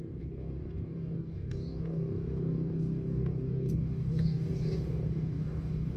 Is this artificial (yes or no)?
yes